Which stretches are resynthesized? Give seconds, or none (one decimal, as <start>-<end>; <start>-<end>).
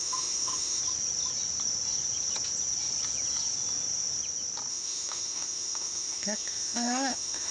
0.0-0.8; 4.7-7.5